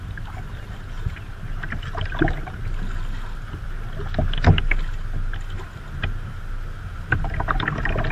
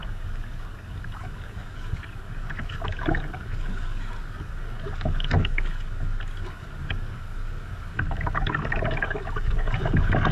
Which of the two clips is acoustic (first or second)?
first